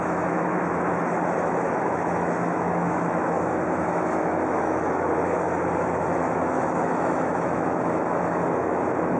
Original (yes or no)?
no